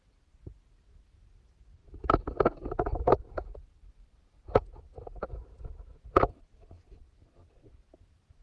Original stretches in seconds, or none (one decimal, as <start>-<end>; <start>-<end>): 0.0-8.4